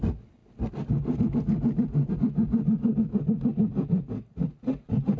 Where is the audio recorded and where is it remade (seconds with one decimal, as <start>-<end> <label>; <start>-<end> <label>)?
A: 0.0-5.2 recorded

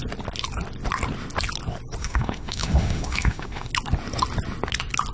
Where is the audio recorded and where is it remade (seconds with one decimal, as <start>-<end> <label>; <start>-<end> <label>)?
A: 0.0-2.0 recorded; 2.0-3.7 remade; 3.7-5.1 recorded